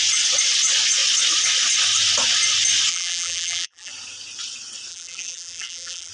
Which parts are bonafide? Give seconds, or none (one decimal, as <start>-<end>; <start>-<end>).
0.0-2.9; 3.9-4.9